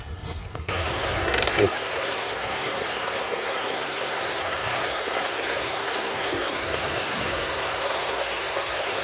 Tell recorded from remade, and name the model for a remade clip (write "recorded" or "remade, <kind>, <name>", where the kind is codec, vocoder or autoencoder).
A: remade, codec, SNAC